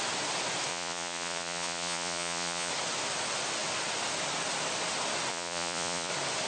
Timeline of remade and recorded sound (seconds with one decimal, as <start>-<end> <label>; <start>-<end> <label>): 0.0-0.7 recorded; 0.7-2.7 remade; 2.7-5.3 recorded; 5.3-6.1 remade; 6.1-6.5 recorded